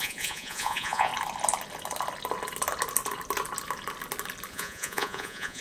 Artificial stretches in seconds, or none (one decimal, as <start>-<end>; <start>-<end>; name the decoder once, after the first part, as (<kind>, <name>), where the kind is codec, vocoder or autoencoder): 0.0-1.1 (vocoder, Vocos); 4.5-5.6